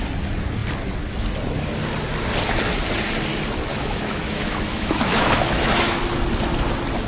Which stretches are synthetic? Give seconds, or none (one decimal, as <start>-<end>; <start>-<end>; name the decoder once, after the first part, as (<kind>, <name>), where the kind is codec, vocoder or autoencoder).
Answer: 3.7-6.0 (autoencoder, DAC-VAE)